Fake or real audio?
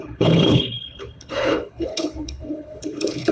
fake